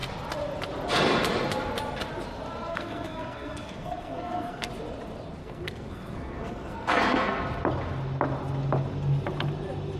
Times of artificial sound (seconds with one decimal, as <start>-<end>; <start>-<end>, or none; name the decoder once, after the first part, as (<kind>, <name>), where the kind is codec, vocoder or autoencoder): 2.7-4.7 (codec, SNAC); 5.4-7.4

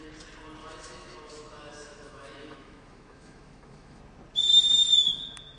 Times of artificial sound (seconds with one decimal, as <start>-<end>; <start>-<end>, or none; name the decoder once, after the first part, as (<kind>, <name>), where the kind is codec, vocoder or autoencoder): 0.6-4.0 (autoencoder, DAC-VAE)

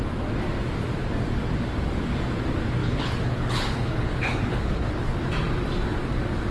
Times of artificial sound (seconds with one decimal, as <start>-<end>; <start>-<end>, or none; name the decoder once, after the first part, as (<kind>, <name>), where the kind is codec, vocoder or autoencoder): 2.8-5.3 (codec, HILCodec)

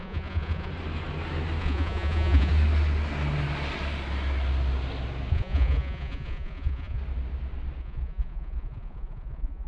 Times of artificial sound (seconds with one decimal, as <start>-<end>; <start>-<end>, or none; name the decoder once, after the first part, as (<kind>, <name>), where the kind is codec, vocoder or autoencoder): 0.0-0.7 (vocoder, Vocos); 1.6-2.5; 5.3-7.0; 7.8-9.7

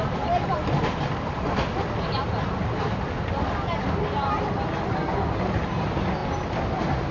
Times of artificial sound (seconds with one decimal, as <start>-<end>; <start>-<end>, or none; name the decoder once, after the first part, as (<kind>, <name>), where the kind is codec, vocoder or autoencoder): none

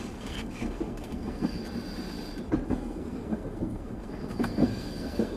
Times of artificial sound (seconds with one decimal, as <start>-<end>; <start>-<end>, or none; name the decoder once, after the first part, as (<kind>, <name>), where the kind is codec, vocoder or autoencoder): 0.0-1.6 (codec, SNAC); 2.7-5.4